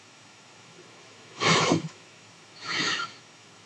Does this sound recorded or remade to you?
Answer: remade